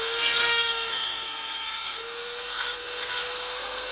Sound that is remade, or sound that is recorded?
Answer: remade